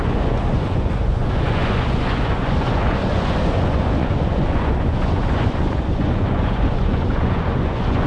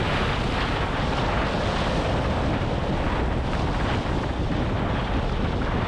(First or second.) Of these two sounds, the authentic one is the second